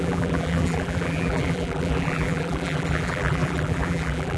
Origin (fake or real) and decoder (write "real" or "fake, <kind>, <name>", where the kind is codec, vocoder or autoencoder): fake, vocoder, BigVGAN v2